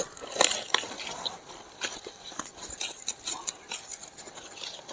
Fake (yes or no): no